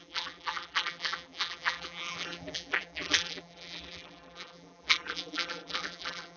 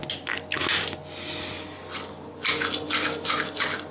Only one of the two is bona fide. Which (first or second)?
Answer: second